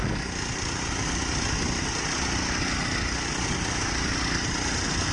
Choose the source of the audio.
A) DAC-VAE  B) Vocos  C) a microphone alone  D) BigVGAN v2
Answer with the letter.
C